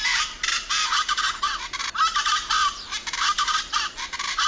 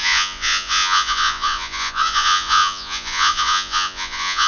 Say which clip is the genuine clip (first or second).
first